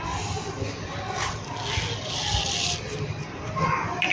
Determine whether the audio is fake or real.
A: real